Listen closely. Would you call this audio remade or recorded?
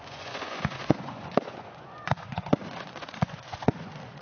remade